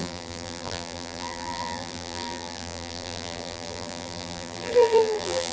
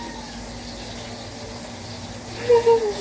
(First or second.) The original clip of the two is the second